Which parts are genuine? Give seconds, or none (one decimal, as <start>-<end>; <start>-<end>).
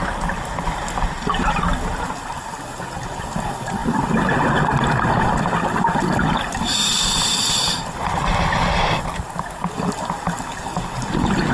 0.0-11.5